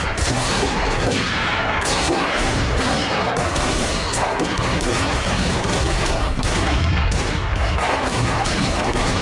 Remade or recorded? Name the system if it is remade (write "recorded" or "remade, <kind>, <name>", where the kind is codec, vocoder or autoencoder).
remade, codec, SNAC